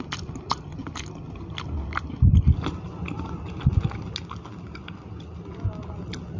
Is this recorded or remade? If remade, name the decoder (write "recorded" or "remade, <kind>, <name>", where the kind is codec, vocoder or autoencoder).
recorded